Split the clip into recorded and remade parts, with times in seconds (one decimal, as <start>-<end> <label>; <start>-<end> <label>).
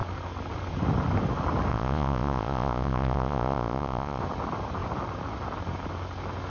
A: 0.0-1.7 recorded; 1.7-4.2 remade; 4.2-6.5 recorded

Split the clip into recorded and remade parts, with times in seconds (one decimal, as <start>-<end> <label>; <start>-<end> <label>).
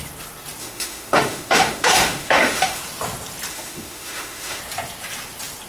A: 0.0-0.6 recorded; 0.6-2.8 remade; 2.8-3.5 recorded; 3.5-4.6 remade; 4.6-5.7 recorded